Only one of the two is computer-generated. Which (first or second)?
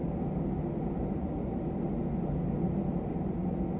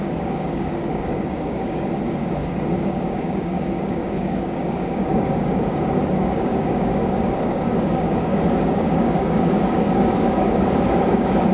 second